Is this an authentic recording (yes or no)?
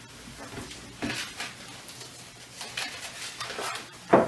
yes